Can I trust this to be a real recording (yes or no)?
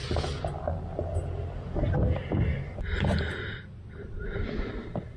yes